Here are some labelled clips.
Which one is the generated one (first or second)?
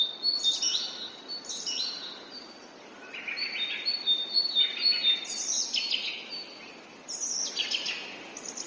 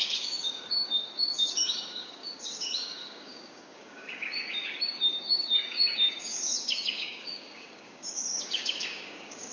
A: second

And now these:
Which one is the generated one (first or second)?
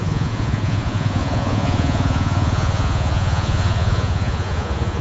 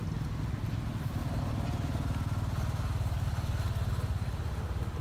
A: first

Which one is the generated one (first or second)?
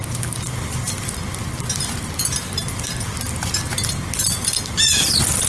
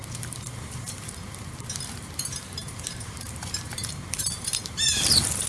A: second